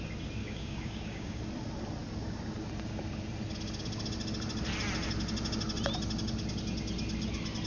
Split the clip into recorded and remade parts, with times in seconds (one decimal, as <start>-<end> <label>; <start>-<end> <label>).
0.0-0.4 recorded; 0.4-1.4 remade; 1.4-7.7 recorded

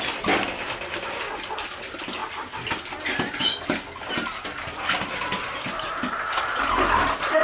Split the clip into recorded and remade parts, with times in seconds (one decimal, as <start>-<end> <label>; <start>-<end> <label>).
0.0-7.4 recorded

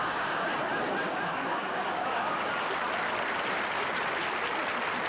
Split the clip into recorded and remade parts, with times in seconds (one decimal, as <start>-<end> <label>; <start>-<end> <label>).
0.0-0.6 remade; 0.6-1.0 recorded; 1.0-2.5 remade; 2.5-5.1 recorded

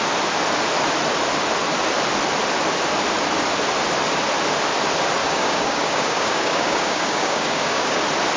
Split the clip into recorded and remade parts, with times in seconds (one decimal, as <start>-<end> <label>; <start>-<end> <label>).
0.0-5.2 recorded; 5.2-8.0 remade; 8.0-8.4 recorded

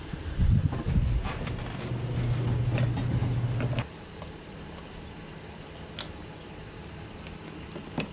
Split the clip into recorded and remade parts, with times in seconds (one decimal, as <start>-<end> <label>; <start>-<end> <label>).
0.0-8.1 recorded